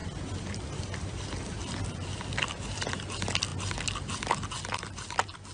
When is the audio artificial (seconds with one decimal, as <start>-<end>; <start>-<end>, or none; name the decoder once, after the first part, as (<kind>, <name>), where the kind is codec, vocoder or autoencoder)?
0.0-2.9 (vocoder, BigVGAN v2)